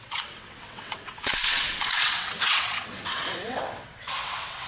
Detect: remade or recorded remade